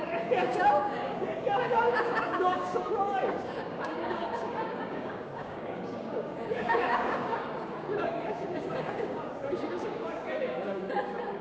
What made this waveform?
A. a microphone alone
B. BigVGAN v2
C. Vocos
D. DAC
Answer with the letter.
D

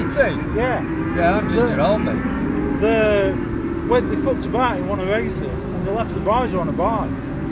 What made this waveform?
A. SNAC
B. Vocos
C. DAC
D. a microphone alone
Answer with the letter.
D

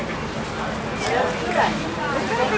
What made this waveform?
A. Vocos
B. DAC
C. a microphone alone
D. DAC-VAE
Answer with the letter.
C